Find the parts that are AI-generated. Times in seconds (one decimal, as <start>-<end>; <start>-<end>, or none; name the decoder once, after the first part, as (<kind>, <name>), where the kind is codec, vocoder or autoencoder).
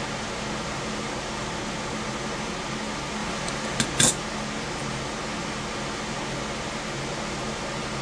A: none